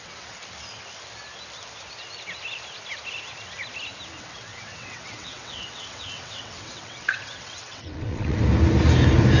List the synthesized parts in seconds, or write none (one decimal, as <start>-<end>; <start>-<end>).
0.0-0.4; 4.2-8.4